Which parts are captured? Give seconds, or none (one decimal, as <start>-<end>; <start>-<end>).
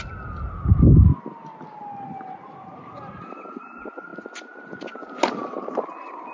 0.0-6.3